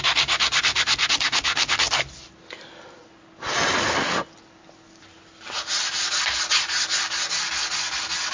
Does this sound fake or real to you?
real